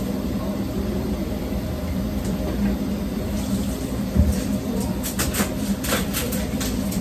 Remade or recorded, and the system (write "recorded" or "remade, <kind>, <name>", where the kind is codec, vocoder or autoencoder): remade, vocoder, BigVGAN v2